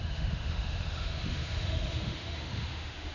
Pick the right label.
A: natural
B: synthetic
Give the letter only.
B